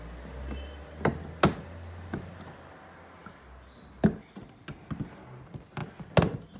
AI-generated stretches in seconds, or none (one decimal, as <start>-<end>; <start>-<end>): none